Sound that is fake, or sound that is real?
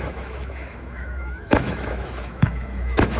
fake